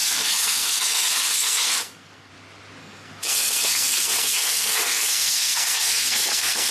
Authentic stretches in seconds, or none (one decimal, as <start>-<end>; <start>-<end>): 2.3-2.8

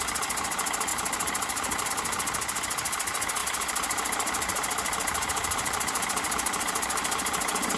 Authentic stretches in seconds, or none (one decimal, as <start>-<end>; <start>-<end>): 0.0-0.9; 1.9-3.4

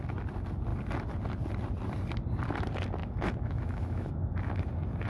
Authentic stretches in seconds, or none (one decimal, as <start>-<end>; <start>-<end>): 0.0-3.0; 4.1-5.1

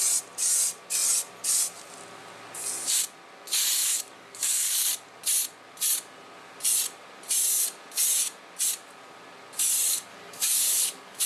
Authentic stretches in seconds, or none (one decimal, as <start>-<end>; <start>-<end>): 0.0-3.8; 4.9-10.1

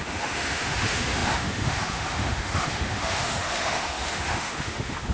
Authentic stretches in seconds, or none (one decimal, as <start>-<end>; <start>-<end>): none

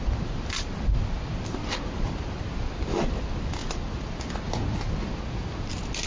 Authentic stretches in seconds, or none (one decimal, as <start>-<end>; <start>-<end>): 0.0-6.1

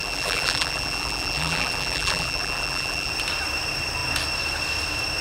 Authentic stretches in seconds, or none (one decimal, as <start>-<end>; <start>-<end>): 3.1-5.2